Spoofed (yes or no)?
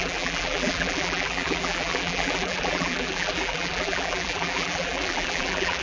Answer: yes